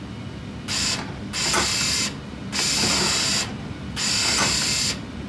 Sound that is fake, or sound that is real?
real